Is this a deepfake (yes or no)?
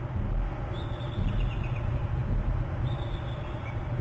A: no